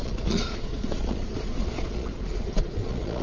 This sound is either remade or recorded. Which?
remade